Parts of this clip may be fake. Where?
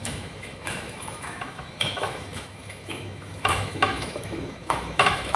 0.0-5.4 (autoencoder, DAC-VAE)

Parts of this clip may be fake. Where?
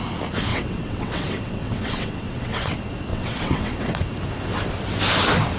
0.5-2.7 (vocoder, WaveNeXt); 3.1-4.0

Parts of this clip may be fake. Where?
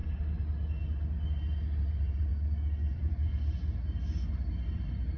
1.8-2.3 (vocoder, BigVGAN v2); 2.9-3.3; 4.3-5.2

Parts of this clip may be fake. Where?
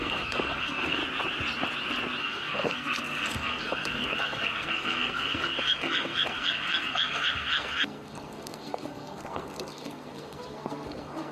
0.0-1.0 (codec, SNAC); 2.2-11.3